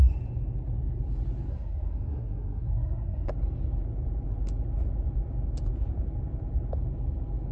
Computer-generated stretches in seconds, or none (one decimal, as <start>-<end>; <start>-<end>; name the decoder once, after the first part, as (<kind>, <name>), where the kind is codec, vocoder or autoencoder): 1.5-3.3 (codec, SNAC)